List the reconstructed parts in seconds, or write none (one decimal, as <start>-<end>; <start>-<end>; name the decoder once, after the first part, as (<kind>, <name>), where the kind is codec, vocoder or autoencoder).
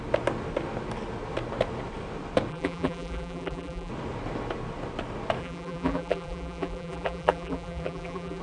2.5-3.9 (vocoder, BigVGAN v2); 5.4-8.4